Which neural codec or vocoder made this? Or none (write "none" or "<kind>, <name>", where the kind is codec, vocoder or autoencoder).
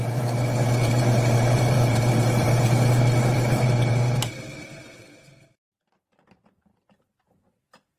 vocoder, BigVGAN v2